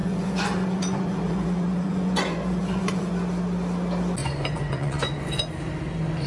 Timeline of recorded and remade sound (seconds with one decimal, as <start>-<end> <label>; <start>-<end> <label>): 0.0-3.1 remade; 3.1-4.2 recorded; 4.2-5.1 remade; 5.1-6.3 recorded

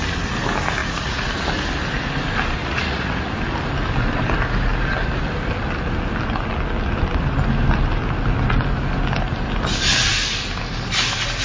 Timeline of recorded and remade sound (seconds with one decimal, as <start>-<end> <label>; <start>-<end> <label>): 0.0-0.8 recorded; 0.8-1.3 remade; 1.3-2.6 recorded; 2.6-3.3 remade; 3.3-11.4 recorded